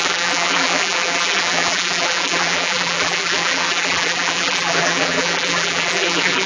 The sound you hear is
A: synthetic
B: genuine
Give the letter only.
A